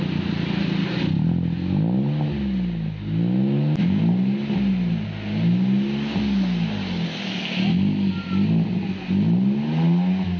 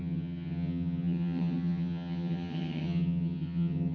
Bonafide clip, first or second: first